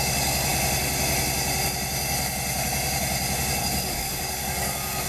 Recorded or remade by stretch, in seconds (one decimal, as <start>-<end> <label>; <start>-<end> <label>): 0.0-0.5 remade; 0.5-3.6 recorded; 3.6-5.1 remade